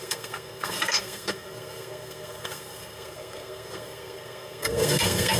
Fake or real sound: fake